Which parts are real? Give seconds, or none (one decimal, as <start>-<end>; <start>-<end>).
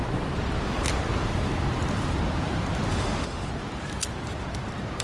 0.0-2.9; 3.5-5.0